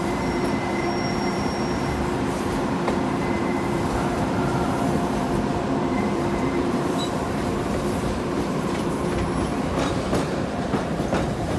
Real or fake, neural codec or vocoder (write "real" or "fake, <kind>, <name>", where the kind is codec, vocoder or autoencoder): fake, vocoder, BigVGAN v2